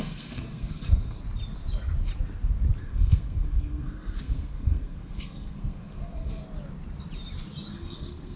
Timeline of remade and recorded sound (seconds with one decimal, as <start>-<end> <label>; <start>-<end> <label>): 0.0-1.2 remade; 1.2-2.8 recorded; 2.8-6.4 remade; 6.4-7.7 recorded; 7.7-8.4 remade

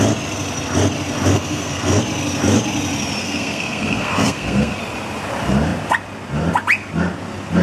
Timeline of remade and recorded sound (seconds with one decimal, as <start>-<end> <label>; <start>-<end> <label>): 0.0-1.3 recorded; 1.3-2.0 remade; 2.0-3.2 recorded; 3.2-4.8 remade; 4.8-7.6 recorded

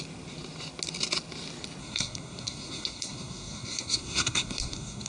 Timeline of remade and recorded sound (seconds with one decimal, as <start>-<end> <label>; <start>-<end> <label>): 0.0-1.8 recorded; 1.8-5.1 remade